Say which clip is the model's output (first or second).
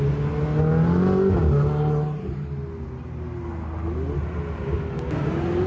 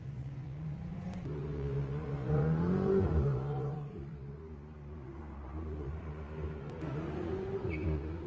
second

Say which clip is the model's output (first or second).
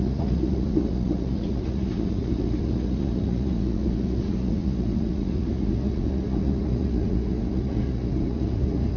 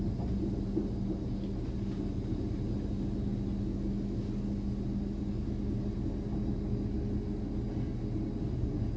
first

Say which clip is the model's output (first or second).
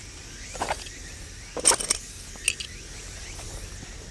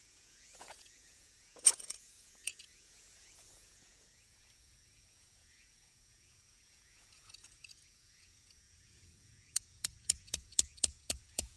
second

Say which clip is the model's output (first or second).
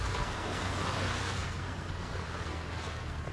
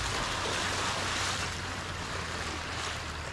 first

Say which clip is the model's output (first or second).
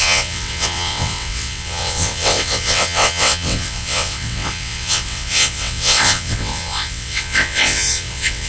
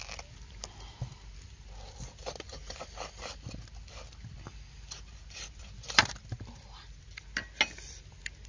first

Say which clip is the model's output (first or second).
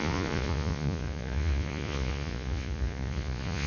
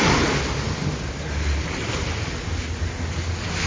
first